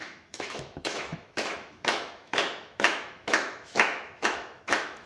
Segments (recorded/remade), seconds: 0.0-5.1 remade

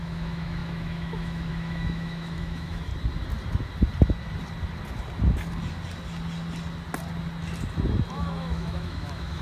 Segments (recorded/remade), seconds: 0.0-2.9 remade; 2.9-8.1 recorded; 8.1-9.4 remade